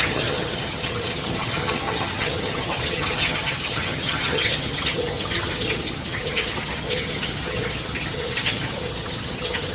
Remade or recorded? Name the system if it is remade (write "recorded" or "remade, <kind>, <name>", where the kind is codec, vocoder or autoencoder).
remade, vocoder, HiFi-GAN